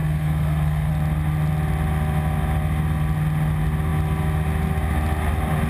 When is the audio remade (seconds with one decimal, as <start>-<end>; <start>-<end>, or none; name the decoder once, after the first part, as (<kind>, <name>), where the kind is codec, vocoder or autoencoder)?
0.0-0.9 (codec, SNAC)